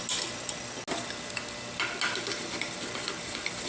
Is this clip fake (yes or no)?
no